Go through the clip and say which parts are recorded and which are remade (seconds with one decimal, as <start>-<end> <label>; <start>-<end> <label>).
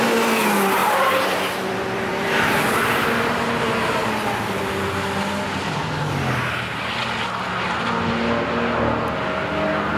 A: 0.0-0.8 recorded; 0.8-2.3 remade; 2.3-10.0 recorded